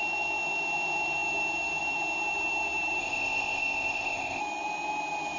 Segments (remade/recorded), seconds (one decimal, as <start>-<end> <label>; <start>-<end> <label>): 0.0-3.0 recorded; 3.0-4.4 remade; 4.4-5.4 recorded